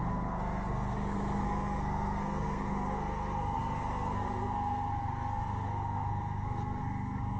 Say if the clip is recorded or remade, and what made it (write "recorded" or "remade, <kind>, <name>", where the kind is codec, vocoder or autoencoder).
remade, codec, SNAC